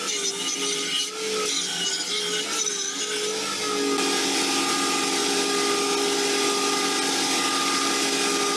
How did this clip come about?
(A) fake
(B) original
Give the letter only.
B